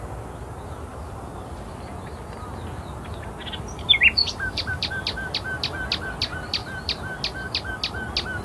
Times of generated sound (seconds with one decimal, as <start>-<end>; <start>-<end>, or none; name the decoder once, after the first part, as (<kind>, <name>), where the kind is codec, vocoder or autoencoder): 0.9-1.5 (vocoder, BigVGAN v2); 4.2-4.9